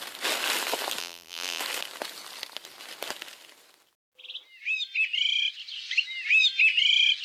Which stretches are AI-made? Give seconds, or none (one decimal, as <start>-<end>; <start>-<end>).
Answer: 1.0-1.6